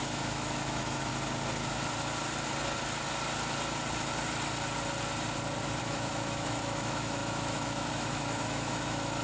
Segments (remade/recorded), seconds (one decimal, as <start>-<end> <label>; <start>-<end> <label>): 0.0-1.1 remade; 1.1-5.8 recorded; 5.8-9.2 remade